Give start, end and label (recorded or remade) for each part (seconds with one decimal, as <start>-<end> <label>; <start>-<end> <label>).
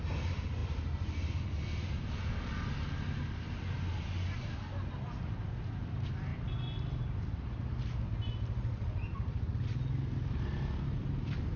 0.0-11.6 recorded